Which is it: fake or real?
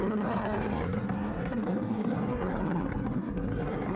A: fake